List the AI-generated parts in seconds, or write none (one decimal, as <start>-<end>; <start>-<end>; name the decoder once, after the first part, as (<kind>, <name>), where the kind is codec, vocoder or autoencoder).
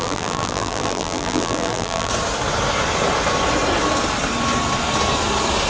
0.0-2.1 (vocoder, BigVGAN v2)